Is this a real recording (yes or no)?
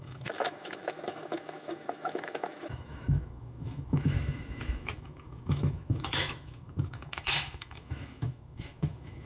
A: no